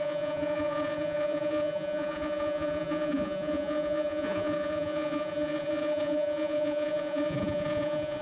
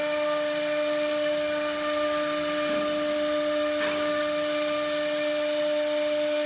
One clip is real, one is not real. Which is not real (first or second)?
first